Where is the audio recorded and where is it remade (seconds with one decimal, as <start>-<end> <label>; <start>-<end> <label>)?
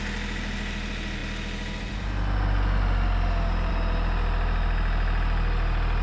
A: 0.0-6.0 recorded